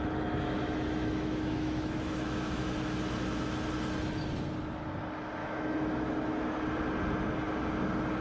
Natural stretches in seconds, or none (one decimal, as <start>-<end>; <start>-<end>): 3.0-5.4; 6.5-8.2